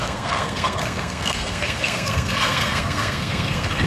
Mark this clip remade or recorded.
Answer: remade